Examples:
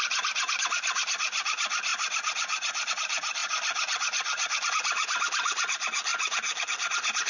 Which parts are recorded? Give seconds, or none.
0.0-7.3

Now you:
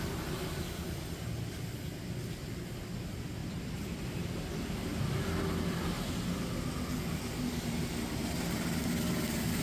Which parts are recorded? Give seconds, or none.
0.0-9.6